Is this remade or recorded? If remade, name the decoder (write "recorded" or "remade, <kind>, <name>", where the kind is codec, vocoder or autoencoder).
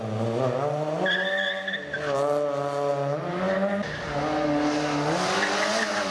recorded